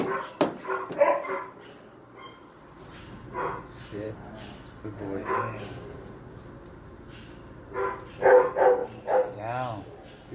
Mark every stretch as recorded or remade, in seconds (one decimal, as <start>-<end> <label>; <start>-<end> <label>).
0.0-3.9 recorded; 3.9-6.4 remade; 6.4-8.8 recorded; 8.8-9.4 remade; 9.4-10.3 recorded